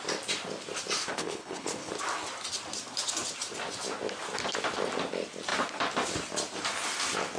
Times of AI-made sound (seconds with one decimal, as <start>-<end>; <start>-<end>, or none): 1.0-1.9